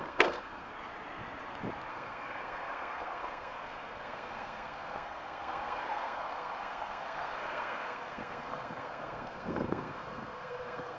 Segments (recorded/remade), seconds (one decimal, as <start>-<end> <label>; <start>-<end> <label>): 0.0-0.7 remade; 0.7-1.9 recorded; 1.9-11.0 remade